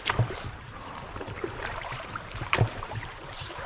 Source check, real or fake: fake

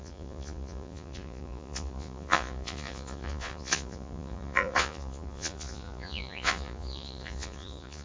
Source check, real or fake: fake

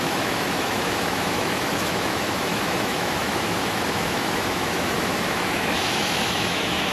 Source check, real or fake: fake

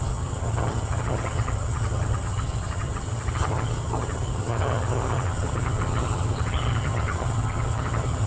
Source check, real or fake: fake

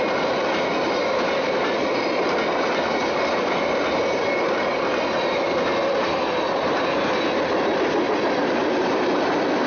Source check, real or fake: real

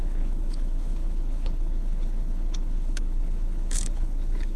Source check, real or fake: fake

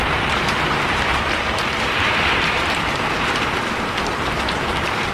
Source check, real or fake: fake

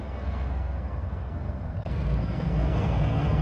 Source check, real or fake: fake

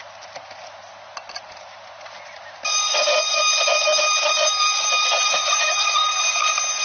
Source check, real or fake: real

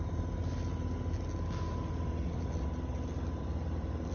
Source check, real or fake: real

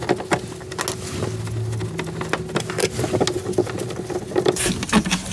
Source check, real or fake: real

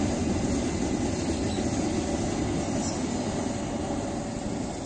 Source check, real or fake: real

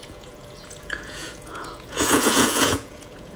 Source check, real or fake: fake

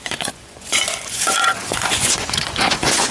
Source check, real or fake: fake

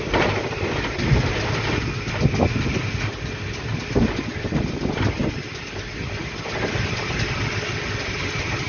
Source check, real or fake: real